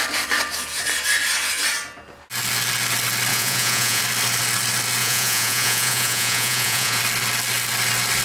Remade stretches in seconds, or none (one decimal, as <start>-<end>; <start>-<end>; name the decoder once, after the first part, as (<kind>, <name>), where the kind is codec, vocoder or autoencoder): 3.3-4.0 (vocoder, Vocos); 5.0-7.0